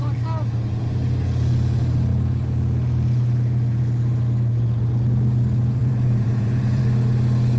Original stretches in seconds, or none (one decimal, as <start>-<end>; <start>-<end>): 0.0-5.8; 6.8-7.6